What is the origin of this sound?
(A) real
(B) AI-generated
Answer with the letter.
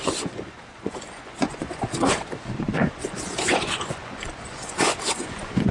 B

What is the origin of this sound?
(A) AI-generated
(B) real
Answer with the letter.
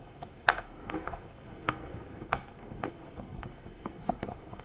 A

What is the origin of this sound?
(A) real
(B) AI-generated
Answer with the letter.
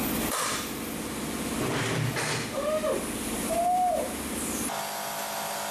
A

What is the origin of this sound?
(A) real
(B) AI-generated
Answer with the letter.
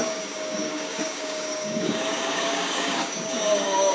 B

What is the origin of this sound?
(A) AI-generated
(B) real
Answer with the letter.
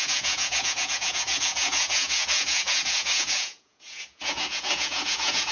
A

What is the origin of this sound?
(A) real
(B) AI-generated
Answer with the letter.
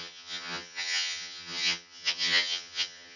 B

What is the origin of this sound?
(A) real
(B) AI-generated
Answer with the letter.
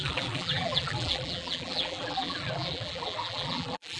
B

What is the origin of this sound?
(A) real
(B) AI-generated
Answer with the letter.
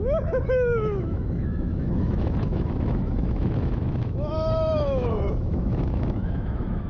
B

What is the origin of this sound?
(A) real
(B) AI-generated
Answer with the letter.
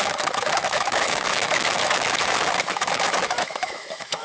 B